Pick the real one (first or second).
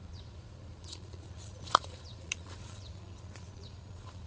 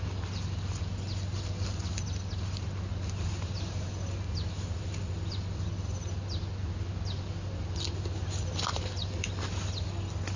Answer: second